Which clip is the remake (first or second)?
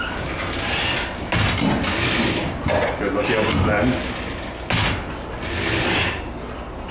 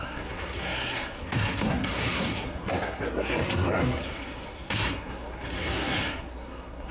second